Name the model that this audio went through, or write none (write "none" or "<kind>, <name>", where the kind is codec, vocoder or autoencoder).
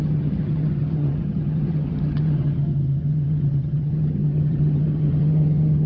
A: vocoder, HiFi-GAN